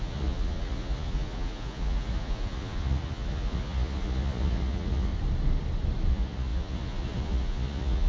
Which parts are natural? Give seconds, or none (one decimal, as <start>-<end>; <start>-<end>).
5.1-6.1